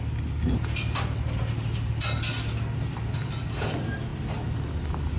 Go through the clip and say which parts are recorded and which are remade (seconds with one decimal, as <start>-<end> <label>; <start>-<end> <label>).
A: 0.0-5.2 recorded